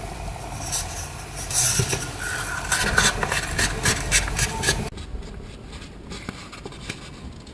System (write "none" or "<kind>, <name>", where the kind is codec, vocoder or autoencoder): none